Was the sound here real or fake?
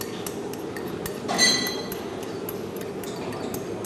real